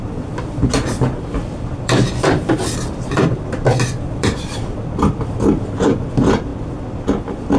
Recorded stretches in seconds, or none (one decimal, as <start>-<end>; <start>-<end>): 0.0-1.4; 5.6-7.6